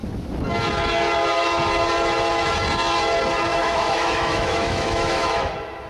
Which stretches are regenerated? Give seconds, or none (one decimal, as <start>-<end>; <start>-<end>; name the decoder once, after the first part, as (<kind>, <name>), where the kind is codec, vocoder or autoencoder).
3.5-5.5 (autoencoder, DAC-VAE)